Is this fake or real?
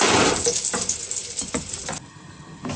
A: real